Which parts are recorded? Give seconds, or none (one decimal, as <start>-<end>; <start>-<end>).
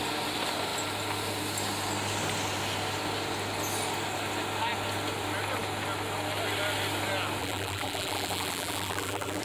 0.0-7.4